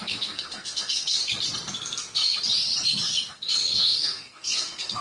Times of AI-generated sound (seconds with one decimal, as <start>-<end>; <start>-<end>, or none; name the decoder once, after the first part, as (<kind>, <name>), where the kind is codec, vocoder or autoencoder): 0.0-1.2 (codec, SNAC); 1.8-2.2; 3.3-5.0